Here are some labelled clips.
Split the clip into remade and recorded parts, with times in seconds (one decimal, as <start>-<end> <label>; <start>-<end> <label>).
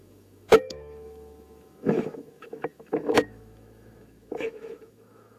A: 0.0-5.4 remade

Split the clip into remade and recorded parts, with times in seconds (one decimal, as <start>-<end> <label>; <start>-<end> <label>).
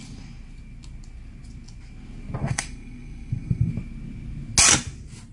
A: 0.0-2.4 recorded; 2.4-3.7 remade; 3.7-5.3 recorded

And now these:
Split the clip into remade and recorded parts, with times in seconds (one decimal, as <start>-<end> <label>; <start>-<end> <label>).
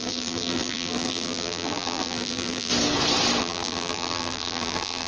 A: 0.0-2.7 remade; 2.7-3.4 recorded; 3.4-5.1 remade